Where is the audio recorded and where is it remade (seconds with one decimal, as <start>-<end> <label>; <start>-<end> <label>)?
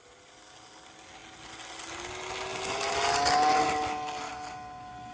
0.0-5.1 recorded